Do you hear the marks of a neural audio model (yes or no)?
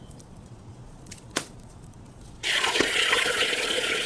yes